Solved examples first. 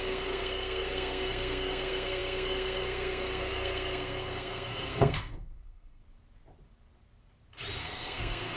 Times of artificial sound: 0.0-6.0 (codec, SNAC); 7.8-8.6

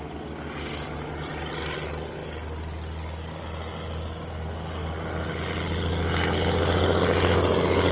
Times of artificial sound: none

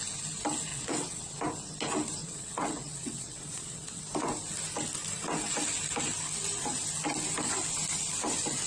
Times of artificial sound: 0.7-1.4 (vocoder, WaveNeXt); 2.2-4.0

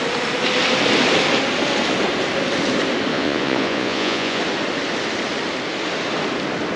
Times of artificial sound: 3.1-4.4 (vocoder, Vocos)